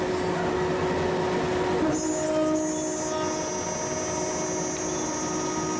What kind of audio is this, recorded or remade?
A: recorded